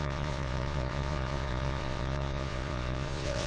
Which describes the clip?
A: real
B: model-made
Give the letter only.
B